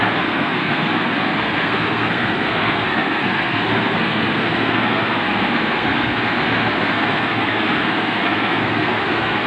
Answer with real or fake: fake